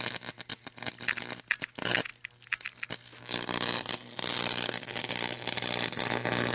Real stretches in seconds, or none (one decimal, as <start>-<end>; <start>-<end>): 0.0-2.1; 6.0-6.5